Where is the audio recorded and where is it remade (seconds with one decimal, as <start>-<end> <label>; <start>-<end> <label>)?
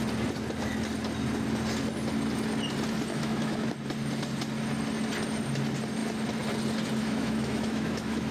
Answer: 0.0-3.1 recorded; 3.1-3.7 remade; 3.7-7.0 recorded; 7.0-8.3 remade